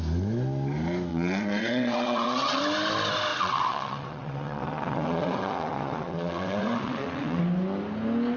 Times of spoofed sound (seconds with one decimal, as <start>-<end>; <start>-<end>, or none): 1.1-2.6; 3.3-7.4